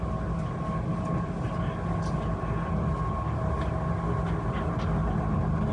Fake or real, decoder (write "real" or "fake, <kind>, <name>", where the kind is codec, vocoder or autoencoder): real